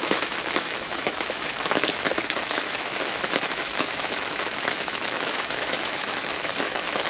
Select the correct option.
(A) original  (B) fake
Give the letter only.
B